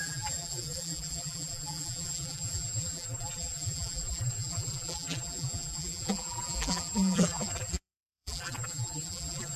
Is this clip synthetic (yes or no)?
yes